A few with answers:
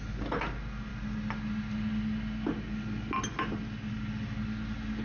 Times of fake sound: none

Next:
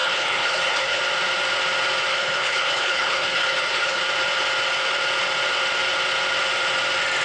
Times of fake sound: 0.0-1.0 (codec, HILCodec); 2.1-4.0